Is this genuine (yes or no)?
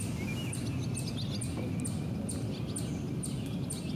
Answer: yes